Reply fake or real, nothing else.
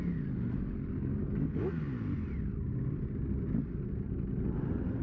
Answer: real